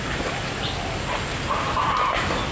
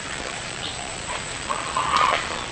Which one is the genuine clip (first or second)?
first